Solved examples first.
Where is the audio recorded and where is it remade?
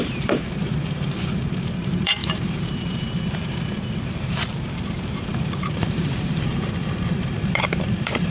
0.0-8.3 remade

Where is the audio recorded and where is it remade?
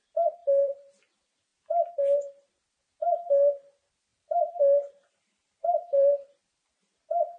0.0-0.4 recorded; 0.4-0.9 remade; 0.9-4.1 recorded; 4.1-6.3 remade; 6.3-7.4 recorded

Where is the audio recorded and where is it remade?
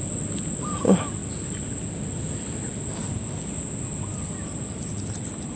0.0-5.6 recorded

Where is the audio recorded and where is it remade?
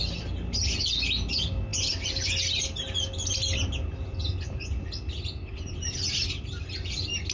0.0-7.3 recorded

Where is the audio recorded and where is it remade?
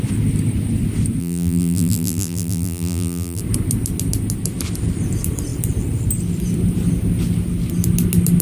0.0-1.2 recorded; 1.2-3.4 remade; 3.4-8.4 recorded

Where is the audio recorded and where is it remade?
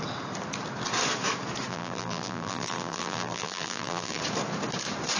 0.0-1.7 recorded; 1.7-4.2 remade; 4.2-5.2 recorded